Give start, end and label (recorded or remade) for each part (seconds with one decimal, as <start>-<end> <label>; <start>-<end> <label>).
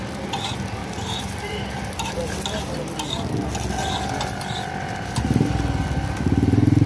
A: 0.0-0.8 recorded; 0.8-1.8 remade; 1.8-6.9 recorded